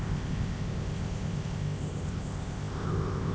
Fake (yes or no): yes